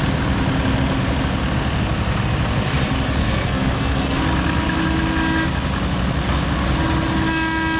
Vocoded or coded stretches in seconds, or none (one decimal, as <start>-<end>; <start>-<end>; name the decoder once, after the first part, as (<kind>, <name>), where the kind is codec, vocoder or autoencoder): 3.2-4.2 (codec, SNAC)